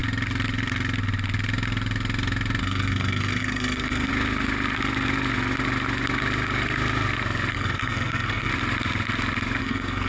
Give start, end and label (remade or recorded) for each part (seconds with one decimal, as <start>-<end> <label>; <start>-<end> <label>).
0.0-2.6 recorded; 2.6-4.1 remade; 4.1-7.5 recorded; 7.5-8.5 remade; 8.5-9.6 recorded; 9.6-10.1 remade